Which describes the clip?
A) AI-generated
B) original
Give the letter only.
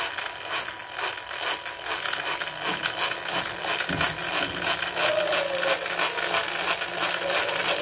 B